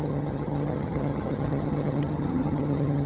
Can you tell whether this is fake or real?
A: fake